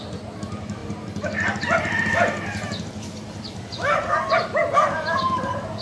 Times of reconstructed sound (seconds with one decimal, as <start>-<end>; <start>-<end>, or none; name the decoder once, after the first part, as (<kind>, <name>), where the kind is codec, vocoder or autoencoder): none